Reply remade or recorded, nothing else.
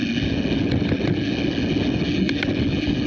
recorded